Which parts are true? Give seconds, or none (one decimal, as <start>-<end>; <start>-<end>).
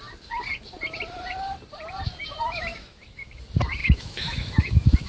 0.0-2.7; 3.4-3.8